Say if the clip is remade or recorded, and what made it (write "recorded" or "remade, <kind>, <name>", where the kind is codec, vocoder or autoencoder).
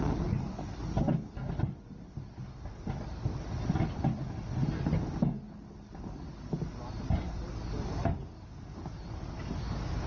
recorded